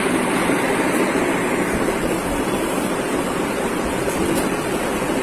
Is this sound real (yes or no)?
no